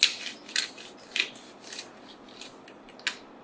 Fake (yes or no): no